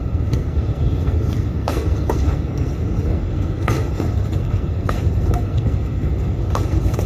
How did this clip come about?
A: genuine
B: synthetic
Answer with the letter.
B